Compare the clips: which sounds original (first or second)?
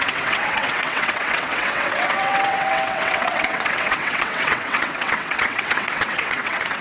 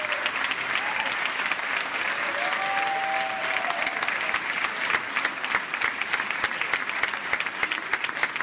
second